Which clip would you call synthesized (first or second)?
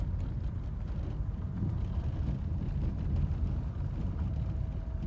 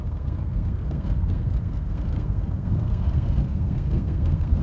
second